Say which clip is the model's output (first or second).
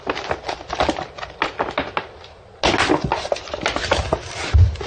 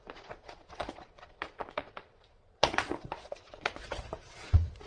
second